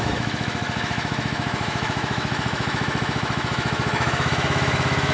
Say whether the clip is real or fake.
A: fake